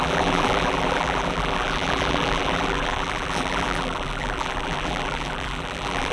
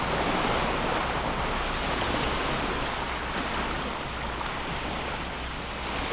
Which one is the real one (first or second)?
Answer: second